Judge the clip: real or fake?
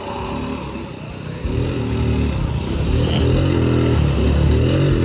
real